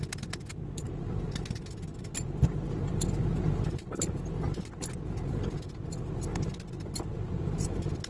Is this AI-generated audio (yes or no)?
no